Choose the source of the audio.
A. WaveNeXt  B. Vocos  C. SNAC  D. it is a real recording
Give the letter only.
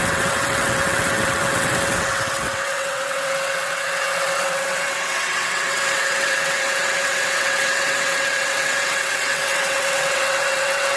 A